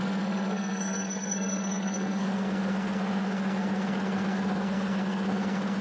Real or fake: fake